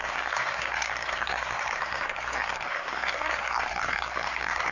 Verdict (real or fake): fake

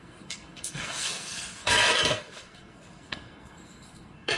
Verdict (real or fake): fake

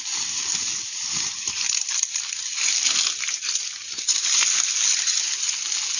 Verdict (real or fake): real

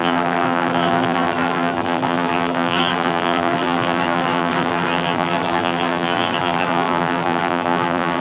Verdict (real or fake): fake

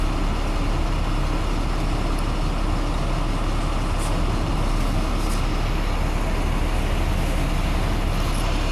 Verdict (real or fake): real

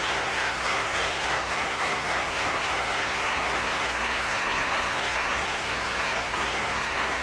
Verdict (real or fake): fake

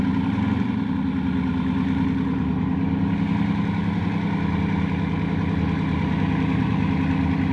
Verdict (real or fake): real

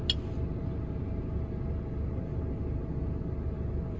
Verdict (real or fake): real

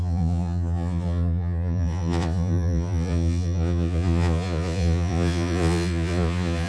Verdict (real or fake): fake